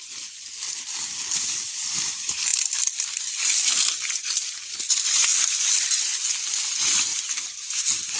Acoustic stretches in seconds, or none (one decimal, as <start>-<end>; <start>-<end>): 0.0-8.2